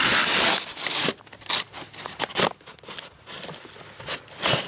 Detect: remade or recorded recorded